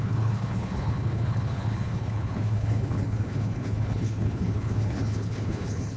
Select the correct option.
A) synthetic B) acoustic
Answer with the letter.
A